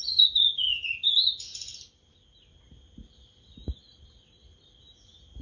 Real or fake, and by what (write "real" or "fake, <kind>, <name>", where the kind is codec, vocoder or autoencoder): real